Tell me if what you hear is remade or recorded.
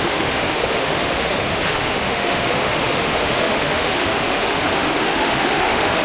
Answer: remade